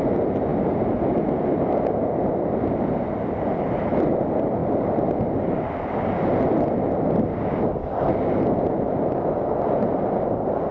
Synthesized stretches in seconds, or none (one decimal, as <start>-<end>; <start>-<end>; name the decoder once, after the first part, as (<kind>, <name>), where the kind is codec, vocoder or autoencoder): none